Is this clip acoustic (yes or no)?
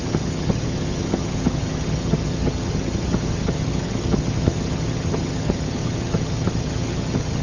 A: no